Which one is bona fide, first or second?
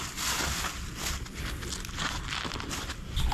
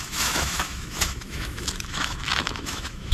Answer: first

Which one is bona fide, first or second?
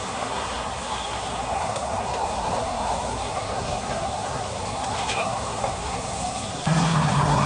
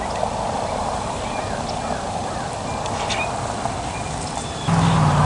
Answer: second